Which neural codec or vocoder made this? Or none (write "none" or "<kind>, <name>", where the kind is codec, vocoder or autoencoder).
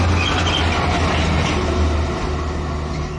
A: none